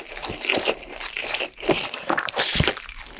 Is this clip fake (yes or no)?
yes